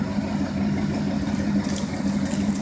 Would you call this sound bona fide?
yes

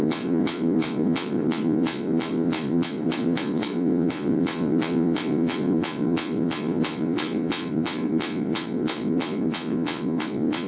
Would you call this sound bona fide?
no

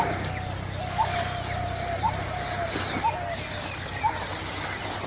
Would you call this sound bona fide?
yes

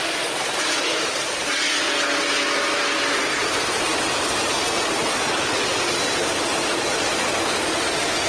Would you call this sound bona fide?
yes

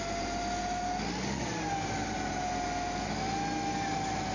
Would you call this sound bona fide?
yes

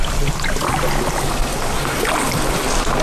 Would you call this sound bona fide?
yes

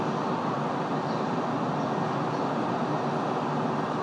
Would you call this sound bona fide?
yes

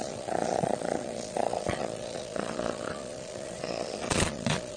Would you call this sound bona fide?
no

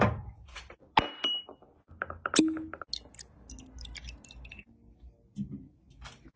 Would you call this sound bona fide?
yes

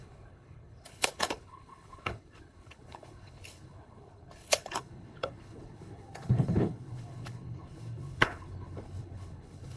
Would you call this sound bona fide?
no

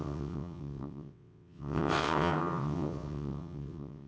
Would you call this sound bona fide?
no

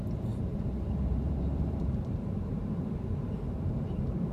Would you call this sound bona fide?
no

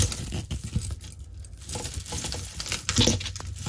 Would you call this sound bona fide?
yes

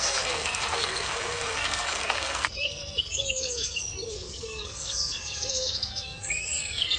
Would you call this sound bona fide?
no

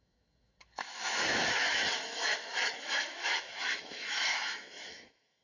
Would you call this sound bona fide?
no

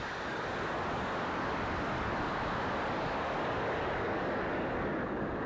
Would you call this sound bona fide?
no